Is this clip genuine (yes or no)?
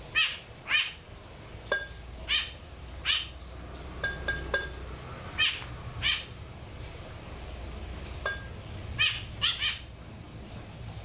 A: yes